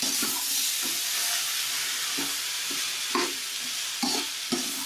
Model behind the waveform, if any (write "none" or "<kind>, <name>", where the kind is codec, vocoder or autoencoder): none